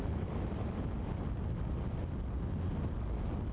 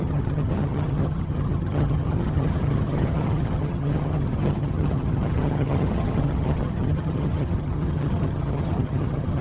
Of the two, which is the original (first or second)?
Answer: first